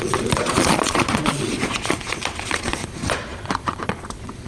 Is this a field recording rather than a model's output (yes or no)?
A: no